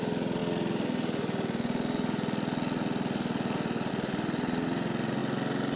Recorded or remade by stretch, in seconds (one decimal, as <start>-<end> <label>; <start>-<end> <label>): 0.0-5.8 recorded